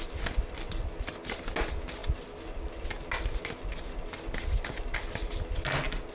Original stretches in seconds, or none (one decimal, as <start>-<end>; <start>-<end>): 0.0-6.1